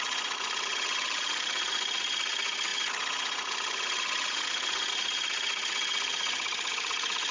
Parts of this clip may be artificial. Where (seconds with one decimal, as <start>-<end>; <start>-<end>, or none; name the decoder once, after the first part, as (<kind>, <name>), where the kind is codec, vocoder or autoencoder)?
0.0-7.3 (vocoder, Vocos)

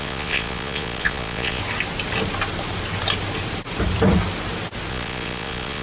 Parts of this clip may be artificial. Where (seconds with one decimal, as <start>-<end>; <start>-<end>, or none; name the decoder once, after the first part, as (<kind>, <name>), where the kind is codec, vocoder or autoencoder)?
0.0-1.6 (vocoder, Vocos); 4.9-5.8

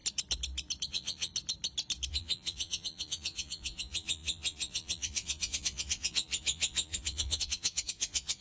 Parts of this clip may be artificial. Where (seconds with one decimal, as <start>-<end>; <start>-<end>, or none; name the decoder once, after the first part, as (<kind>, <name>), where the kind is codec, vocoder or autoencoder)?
0.9-1.3 (vocoder, Vocos); 2.1-8.4